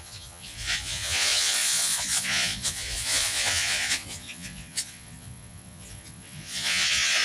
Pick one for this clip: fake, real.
fake